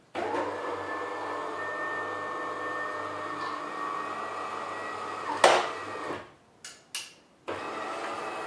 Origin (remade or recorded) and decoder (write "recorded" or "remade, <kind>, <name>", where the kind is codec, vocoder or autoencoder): recorded